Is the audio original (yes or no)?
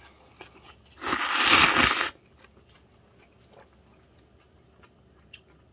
yes